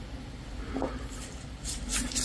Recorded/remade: recorded